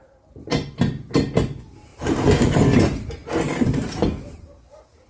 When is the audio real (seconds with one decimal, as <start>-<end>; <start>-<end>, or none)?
0.0-5.1